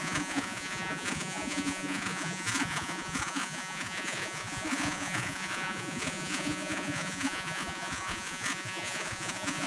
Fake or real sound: fake